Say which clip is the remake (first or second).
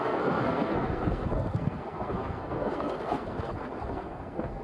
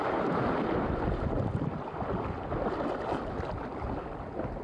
first